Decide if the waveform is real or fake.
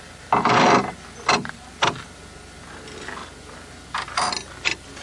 real